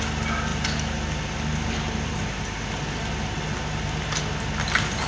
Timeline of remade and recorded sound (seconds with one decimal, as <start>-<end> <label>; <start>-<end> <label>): 0.0-5.1 recorded